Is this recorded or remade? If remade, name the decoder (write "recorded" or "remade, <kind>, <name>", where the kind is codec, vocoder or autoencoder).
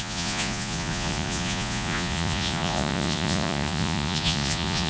remade, vocoder, Vocos